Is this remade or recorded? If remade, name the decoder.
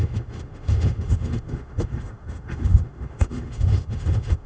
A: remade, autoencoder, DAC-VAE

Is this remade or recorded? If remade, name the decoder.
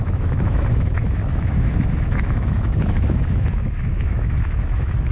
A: remade, autoencoder, DAC-VAE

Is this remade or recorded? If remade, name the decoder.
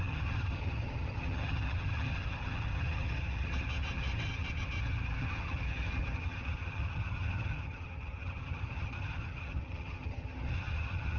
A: remade, vocoder, HiFi-GAN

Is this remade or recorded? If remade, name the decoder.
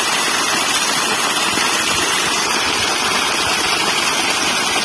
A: recorded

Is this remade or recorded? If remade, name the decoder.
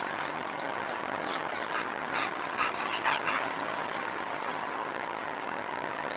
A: remade, vocoder, HiFi-GAN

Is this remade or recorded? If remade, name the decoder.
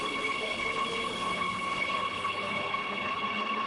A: remade, codec, HILCodec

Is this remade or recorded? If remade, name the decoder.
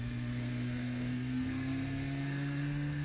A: remade, codec, SNAC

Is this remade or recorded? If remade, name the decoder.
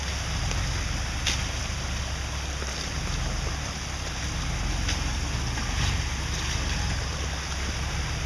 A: recorded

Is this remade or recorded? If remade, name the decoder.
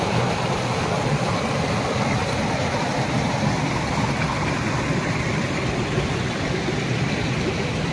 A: recorded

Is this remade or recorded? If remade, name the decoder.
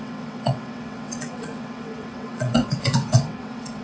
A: remade, vocoder, WaveNeXt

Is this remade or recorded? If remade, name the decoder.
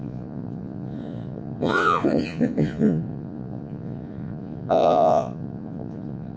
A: remade, vocoder, Vocos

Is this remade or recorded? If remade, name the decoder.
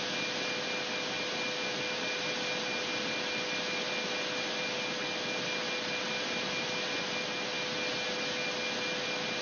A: recorded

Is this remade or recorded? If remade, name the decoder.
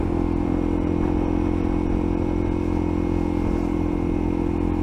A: recorded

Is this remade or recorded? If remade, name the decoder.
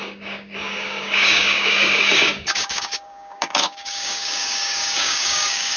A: remade, codec, DAC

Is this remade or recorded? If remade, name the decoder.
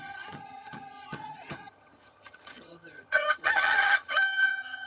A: remade, vocoder, HiFi-GAN